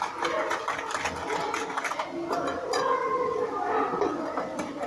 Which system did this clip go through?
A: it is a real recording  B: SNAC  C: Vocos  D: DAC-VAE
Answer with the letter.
A